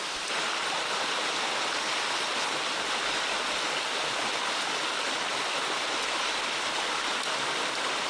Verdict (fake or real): real